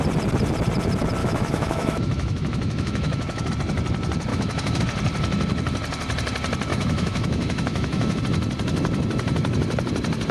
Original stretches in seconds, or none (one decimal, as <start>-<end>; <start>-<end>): 0.0-1.2; 3.5-4.3; 4.8-6.7; 8.2-10.3